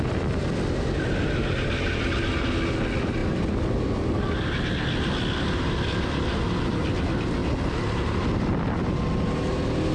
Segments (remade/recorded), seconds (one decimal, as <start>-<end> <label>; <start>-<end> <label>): 0.0-9.9 recorded